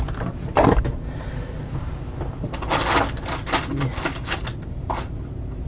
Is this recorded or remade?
recorded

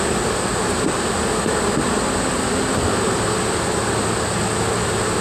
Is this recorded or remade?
recorded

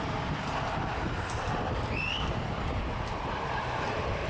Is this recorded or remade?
recorded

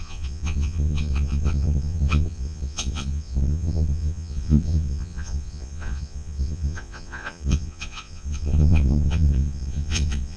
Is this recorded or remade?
remade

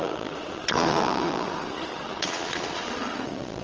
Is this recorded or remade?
remade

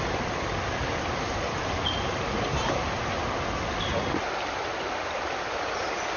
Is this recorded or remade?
recorded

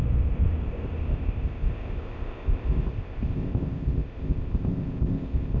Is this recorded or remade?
remade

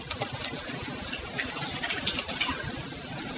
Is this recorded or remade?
recorded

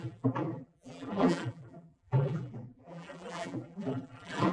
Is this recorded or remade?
remade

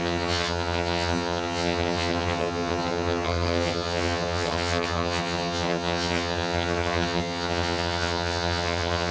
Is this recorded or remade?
remade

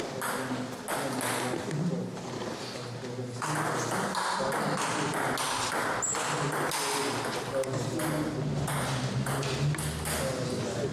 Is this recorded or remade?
recorded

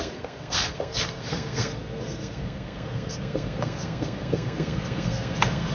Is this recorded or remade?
remade